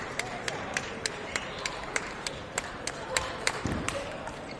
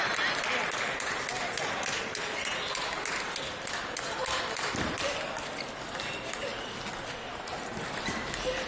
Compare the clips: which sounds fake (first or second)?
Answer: first